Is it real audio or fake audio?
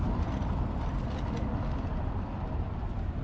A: real